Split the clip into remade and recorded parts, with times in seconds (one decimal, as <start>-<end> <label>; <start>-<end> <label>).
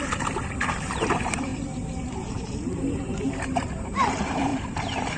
0.0-5.2 remade